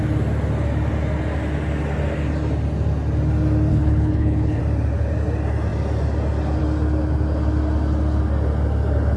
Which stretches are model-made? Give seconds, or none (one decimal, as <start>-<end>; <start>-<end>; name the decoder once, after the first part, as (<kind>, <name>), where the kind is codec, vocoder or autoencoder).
3.7-4.6 (codec, HILCodec)